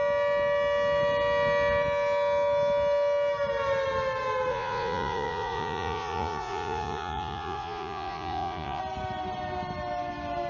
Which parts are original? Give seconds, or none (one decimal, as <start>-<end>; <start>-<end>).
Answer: 0.0-4.5; 8.8-10.5